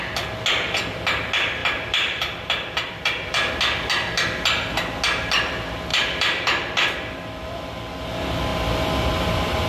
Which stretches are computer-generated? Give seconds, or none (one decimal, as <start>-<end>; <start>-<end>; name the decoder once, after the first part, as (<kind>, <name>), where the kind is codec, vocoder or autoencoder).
1.6-3.5 (vocoder, BigVGAN v2); 5.9-6.9